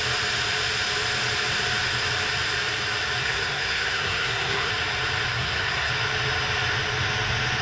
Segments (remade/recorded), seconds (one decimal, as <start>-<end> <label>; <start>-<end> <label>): 0.0-3.2 recorded; 3.2-4.7 remade; 4.7-5.3 recorded; 5.3-5.9 remade; 5.9-7.6 recorded